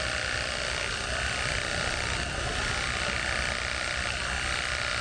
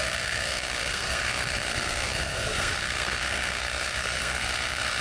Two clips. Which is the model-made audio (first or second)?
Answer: second